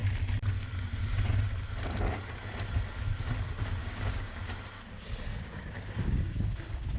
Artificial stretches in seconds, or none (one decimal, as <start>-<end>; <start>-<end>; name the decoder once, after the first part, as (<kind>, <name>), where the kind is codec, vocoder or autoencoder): 3.8-4.4 (codec, DAC); 5.3-7.0